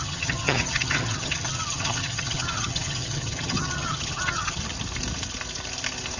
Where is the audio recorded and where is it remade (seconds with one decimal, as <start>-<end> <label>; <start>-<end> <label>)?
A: 0.0-4.6 remade; 4.6-6.2 recorded